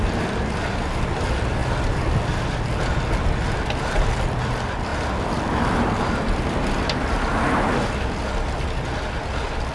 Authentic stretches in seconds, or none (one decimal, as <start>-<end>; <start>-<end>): 0.0-9.7